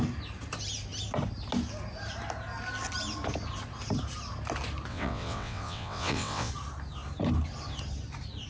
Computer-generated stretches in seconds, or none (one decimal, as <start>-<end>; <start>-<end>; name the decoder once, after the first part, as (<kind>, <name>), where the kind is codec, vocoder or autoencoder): 4.9-6.5 (vocoder, WaveNeXt)